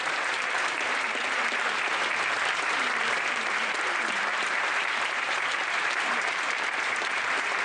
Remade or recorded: remade